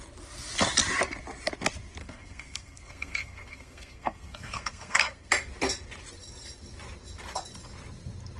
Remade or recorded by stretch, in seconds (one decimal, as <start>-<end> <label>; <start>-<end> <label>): 0.0-2.0 recorded; 2.0-5.3 remade; 5.3-8.4 recorded